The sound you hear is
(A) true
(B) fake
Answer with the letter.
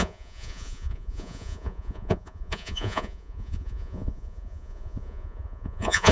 B